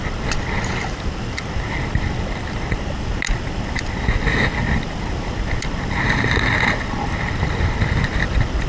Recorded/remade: recorded